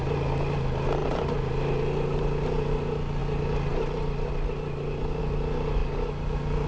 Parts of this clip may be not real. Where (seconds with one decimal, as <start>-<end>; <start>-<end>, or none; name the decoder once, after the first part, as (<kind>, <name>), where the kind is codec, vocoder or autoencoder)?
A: none